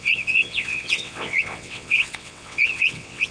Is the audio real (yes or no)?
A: no